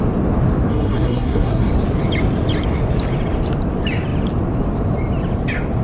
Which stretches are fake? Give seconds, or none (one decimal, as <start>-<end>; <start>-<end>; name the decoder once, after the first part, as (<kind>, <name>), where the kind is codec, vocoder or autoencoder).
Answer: 0.7-1.7 (codec, SNAC)

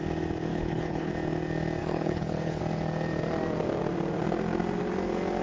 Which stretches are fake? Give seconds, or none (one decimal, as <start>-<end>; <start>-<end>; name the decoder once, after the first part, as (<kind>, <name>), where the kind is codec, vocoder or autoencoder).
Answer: 0.5-1.1 (codec, HILCodec); 1.8-2.6

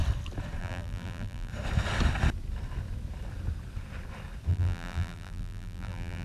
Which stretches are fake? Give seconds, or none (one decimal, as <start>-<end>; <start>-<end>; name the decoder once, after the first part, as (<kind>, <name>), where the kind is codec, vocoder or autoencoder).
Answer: 0.6-1.5 (vocoder, BigVGAN v2); 4.5-6.2

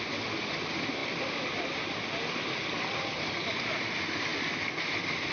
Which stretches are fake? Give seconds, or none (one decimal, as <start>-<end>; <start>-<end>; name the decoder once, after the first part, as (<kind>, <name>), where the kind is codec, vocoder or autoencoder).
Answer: none